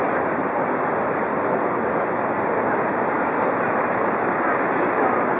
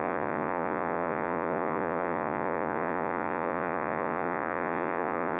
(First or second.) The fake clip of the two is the second